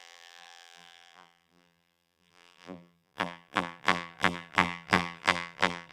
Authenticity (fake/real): fake